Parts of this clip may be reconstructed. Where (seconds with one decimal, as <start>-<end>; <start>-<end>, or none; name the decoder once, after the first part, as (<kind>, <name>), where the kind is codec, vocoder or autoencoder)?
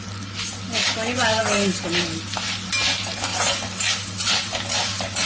none